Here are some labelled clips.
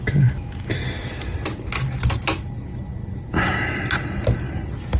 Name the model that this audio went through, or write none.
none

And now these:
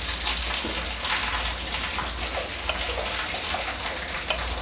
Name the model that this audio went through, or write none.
none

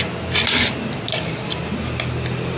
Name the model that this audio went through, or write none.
none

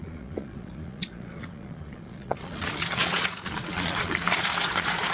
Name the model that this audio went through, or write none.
vocoder, Vocos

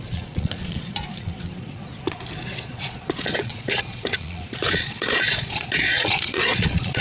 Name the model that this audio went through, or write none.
vocoder, Vocos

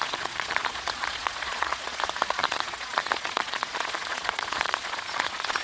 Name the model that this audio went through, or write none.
vocoder, Vocos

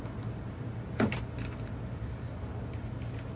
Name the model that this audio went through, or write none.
none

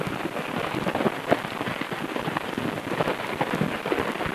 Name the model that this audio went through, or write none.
none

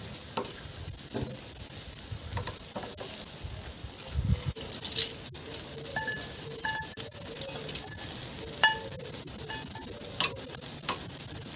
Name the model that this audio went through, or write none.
none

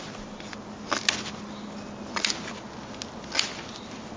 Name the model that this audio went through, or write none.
none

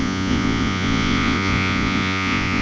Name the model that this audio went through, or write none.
vocoder, Vocos